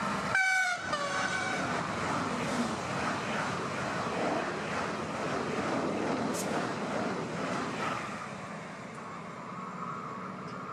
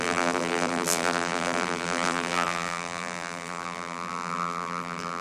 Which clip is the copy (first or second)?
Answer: second